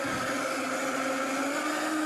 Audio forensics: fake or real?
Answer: real